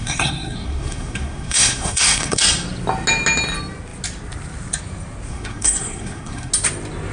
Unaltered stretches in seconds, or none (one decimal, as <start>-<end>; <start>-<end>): 2.4-5.3; 6.5-7.1